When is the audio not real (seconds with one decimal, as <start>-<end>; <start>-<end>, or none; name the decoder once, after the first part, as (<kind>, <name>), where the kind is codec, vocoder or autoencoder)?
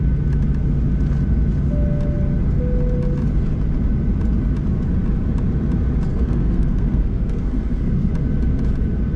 6.1-8.1 (codec, SNAC)